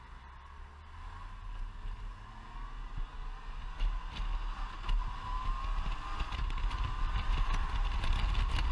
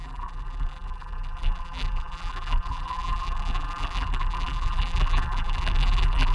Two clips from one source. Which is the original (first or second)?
first